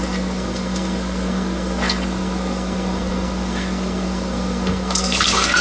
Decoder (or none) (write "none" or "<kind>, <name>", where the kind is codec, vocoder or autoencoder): codec, SNAC